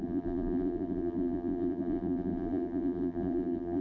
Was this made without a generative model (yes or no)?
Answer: no